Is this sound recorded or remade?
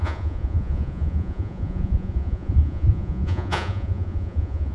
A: remade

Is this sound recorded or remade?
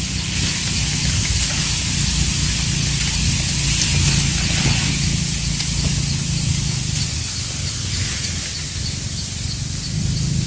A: recorded